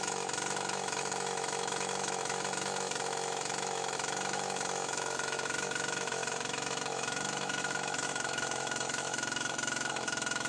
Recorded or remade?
remade